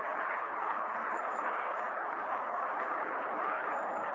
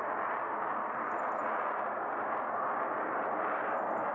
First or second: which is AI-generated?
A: first